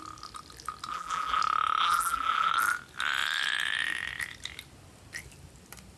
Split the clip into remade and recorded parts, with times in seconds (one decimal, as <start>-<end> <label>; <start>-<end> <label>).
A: 0.0-0.9 recorded; 0.9-1.4 remade; 1.4-1.8 recorded; 1.8-2.5 remade; 2.5-6.0 recorded